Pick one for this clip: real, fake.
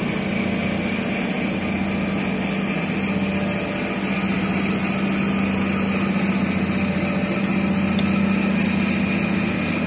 real